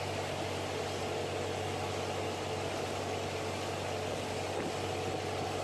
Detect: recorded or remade recorded